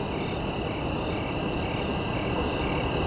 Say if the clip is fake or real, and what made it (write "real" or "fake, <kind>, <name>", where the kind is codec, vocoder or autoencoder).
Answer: real